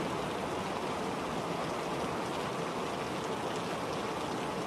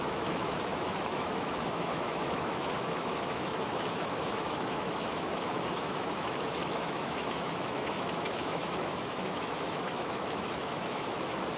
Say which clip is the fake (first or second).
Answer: second